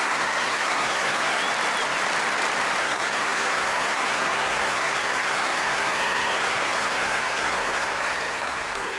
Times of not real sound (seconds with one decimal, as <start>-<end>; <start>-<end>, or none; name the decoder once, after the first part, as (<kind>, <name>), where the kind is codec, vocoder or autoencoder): 0.0-1.4 (codec, SNAC); 2.8-9.0